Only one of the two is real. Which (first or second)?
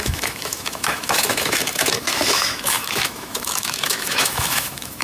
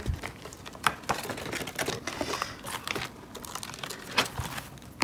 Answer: second